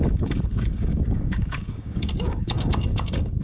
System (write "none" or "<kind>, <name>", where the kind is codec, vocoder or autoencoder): codec, DAC